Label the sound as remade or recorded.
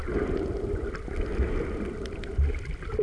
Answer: recorded